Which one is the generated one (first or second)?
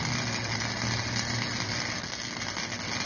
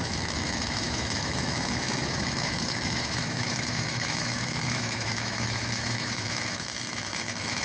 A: second